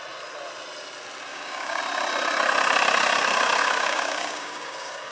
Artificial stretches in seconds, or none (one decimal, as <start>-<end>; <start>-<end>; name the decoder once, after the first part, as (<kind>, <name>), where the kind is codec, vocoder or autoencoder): 1.3-1.8 (codec, DAC); 3.6-5.1